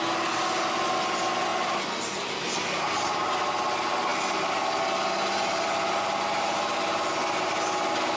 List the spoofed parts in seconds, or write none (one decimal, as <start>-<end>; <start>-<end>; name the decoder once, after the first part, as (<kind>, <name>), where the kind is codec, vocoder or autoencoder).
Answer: none